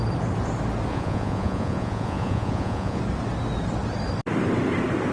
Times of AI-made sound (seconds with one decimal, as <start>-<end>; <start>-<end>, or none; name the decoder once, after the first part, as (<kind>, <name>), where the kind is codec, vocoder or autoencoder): 0.9-3.0 (vocoder, Vocos)

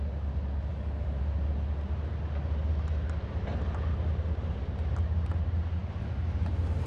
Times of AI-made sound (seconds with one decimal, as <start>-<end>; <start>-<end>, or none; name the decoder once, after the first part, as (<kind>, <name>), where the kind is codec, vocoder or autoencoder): 0.7-1.2 (codec, DAC)